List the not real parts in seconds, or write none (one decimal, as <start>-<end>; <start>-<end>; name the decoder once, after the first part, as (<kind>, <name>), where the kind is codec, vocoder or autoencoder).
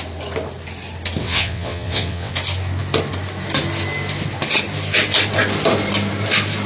1.2-2.3 (vocoder, WaveNeXt)